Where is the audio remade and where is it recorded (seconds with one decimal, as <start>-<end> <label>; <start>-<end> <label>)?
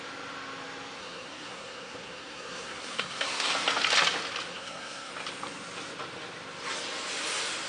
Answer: 0.0-1.0 recorded; 1.0-3.5 remade; 3.5-4.5 recorded; 4.5-5.1 remade; 5.1-7.7 recorded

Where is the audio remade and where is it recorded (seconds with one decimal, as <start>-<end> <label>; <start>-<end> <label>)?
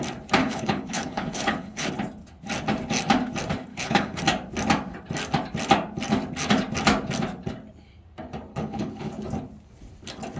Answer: 0.0-0.4 recorded; 0.4-1.9 remade; 1.9-3.7 recorded; 3.7-4.2 remade; 4.2-8.5 recorded; 8.5-9.1 remade; 9.1-10.4 recorded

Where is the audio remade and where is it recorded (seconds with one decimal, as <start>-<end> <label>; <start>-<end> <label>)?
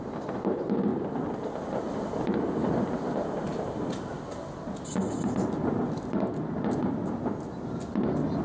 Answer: 0.0-8.4 recorded